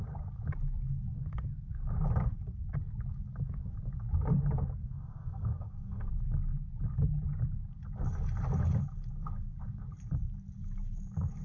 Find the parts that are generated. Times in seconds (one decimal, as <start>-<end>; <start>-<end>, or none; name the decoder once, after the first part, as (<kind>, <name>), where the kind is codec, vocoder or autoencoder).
4.8-6.1 (codec, SNAC)